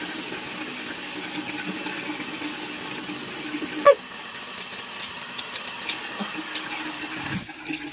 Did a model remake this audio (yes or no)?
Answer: no